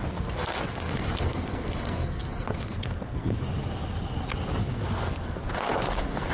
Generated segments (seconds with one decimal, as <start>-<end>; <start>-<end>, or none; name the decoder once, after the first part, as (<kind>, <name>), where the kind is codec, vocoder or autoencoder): 0.0-3.4 (codec, SNAC); 4.6-6.3